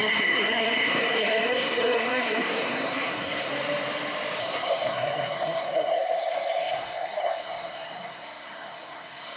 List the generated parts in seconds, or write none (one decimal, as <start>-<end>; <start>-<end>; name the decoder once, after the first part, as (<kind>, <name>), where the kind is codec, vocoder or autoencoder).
0.0-3.5 (codec, SNAC); 4.4-9.4